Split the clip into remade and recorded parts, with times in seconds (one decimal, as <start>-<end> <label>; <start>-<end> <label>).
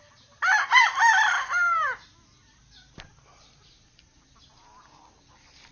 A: 0.0-5.7 recorded